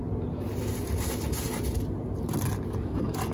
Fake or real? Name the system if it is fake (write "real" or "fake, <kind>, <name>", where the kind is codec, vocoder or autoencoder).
fake, vocoder, BigVGAN v2